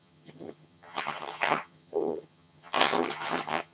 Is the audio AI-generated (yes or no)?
yes